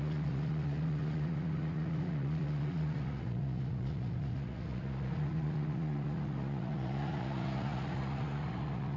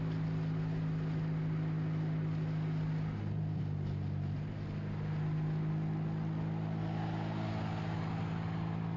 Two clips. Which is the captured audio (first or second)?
second